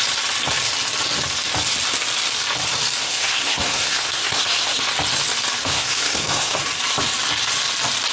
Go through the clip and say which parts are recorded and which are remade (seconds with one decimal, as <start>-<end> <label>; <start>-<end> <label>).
0.0-3.0 recorded; 3.0-4.8 remade; 4.8-5.6 recorded; 5.6-6.6 remade; 6.6-8.1 recorded